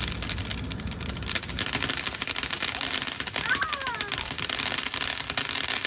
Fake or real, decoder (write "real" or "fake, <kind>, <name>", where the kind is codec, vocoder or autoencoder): real